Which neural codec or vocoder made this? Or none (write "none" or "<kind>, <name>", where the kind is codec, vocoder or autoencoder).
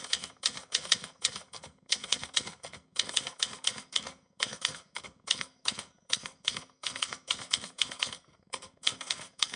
codec, SNAC